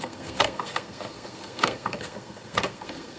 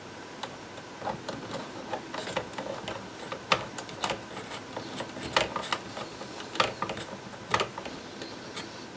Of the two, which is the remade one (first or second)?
first